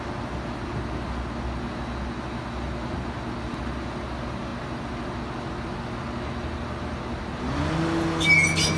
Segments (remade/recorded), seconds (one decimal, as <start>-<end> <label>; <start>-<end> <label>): 0.0-8.8 recorded